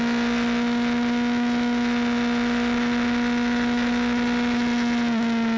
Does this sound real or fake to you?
real